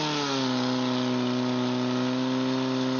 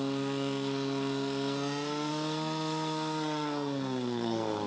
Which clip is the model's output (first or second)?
second